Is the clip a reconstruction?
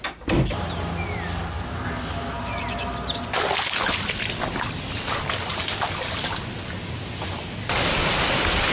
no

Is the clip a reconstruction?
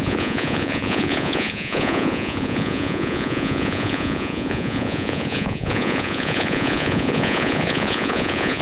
yes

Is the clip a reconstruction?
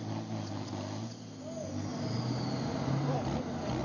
no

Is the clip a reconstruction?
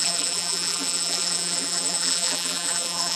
yes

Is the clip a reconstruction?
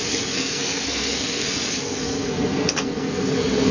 yes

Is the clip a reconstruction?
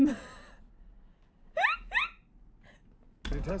no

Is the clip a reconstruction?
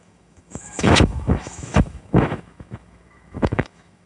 yes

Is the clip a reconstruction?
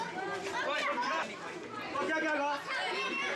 no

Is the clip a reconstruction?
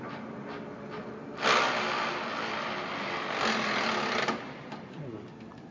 no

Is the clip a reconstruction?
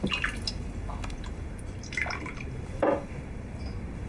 no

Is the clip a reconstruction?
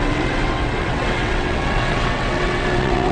yes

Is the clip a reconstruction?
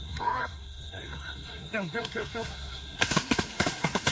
yes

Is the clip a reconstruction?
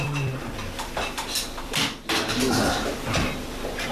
yes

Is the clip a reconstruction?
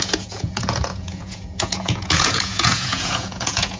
yes